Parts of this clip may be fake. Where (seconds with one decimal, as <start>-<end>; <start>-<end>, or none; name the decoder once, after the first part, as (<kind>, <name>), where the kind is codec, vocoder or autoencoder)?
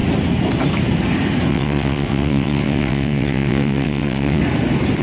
1.5-4.4 (vocoder, WaveNeXt)